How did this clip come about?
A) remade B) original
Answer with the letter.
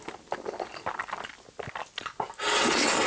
B